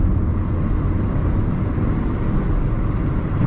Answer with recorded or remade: remade